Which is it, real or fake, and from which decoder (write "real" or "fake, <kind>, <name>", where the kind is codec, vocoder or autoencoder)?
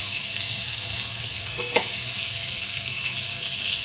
fake, codec, SNAC